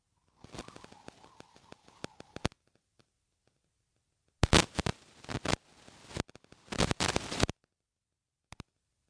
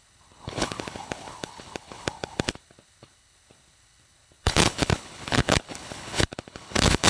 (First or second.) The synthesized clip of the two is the second